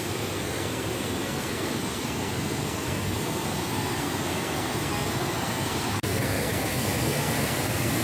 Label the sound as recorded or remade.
remade